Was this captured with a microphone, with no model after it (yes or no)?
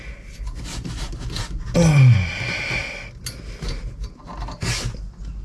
yes